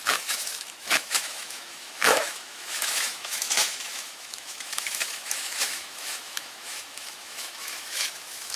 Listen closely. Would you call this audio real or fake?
fake